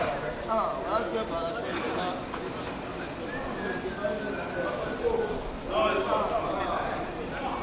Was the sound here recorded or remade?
recorded